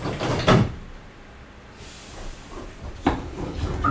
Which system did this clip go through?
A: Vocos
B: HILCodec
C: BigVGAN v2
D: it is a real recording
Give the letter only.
C